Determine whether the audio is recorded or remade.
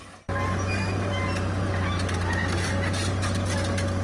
recorded